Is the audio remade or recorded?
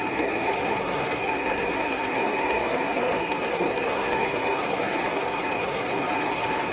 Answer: remade